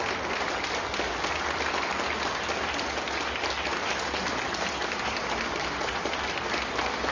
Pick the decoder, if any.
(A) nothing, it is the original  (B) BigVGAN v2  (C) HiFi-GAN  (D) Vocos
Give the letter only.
A